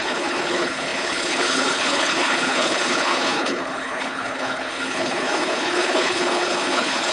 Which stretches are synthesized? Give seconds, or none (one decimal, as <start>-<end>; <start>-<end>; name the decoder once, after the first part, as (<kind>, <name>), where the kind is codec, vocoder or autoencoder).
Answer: 0.0-7.1 (codec, HILCodec)